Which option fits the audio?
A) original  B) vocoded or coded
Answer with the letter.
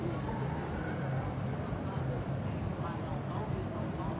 A